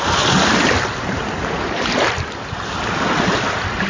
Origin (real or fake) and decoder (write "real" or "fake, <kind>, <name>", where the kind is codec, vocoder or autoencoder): real